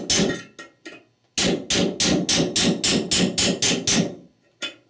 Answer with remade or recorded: recorded